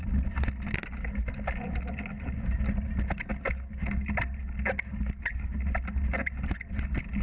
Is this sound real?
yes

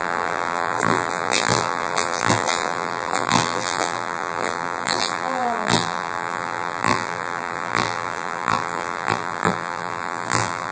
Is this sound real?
no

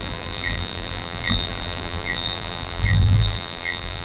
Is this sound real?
no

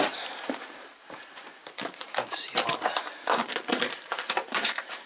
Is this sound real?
no